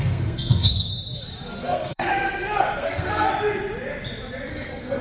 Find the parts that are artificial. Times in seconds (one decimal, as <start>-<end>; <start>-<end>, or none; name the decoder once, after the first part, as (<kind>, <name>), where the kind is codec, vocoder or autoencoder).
0.0-0.9 (codec, SNAC); 1.5-3.3; 4.5-5.0